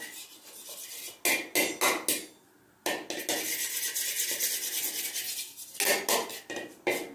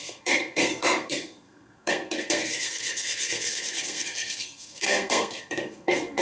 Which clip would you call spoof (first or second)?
second